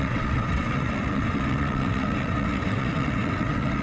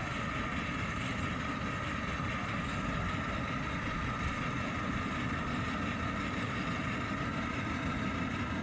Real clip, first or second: second